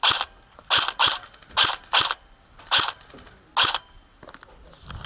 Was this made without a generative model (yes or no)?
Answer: yes